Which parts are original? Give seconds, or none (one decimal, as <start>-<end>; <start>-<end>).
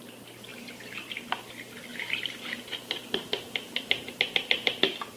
0.0-0.5; 1.1-1.9; 4.2-5.2